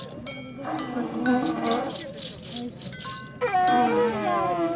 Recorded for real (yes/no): yes